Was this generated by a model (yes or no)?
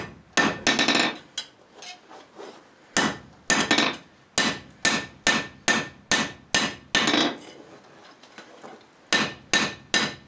no